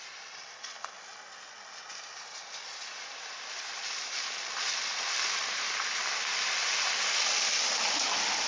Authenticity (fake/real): real